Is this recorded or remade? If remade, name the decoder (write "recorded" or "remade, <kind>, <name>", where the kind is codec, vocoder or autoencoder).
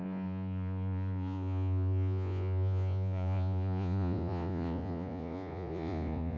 remade, vocoder, Vocos